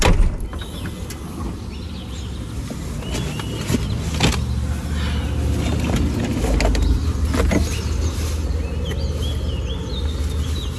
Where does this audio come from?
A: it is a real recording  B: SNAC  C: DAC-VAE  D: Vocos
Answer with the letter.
A